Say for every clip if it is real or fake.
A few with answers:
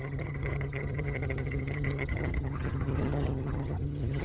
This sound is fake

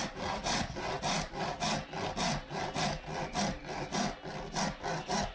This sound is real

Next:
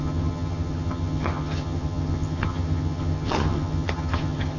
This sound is fake